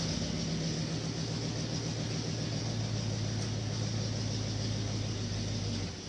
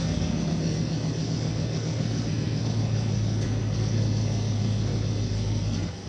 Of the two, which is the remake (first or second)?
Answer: second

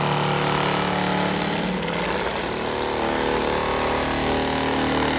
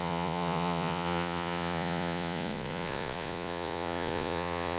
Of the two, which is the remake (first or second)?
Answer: second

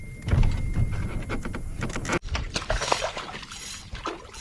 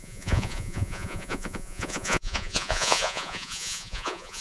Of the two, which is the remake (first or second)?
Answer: second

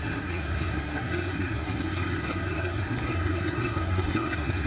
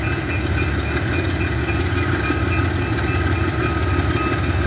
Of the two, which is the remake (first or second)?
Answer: first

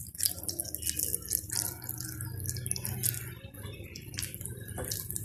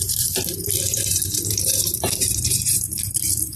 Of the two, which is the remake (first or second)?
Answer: second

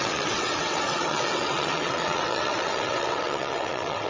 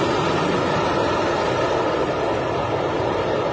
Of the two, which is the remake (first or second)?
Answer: first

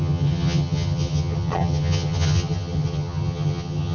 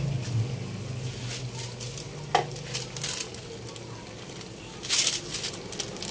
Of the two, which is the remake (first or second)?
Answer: first